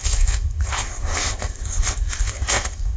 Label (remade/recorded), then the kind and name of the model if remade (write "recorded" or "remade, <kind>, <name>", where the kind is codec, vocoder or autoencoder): remade, codec, ZipCodec